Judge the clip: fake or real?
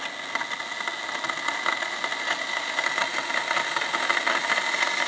real